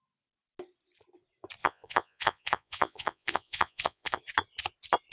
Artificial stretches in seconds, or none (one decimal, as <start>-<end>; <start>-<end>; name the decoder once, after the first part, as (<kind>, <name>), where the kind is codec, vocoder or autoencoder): 1.6-4.2 (vocoder, Vocos)